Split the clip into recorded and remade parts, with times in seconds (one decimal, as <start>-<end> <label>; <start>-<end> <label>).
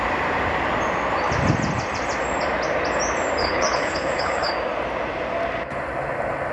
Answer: 0.0-3.4 recorded; 3.4-4.5 remade; 4.5-6.5 recorded